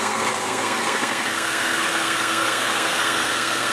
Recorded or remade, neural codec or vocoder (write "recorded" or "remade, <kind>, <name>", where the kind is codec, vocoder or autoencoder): remade, codec, SNAC